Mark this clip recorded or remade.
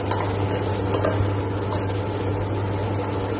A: recorded